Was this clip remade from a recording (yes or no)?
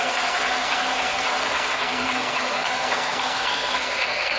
yes